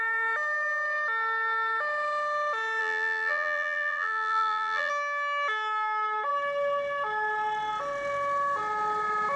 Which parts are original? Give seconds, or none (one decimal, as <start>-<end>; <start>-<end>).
0.0-2.8; 4.9-9.4